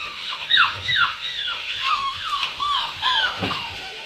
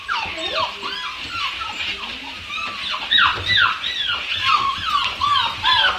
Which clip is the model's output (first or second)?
first